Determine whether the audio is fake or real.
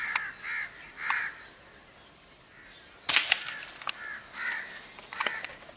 real